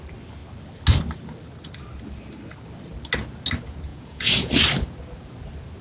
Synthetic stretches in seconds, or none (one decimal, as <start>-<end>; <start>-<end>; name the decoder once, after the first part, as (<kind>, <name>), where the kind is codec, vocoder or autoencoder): 3.9-4.5 (vocoder, Vocos)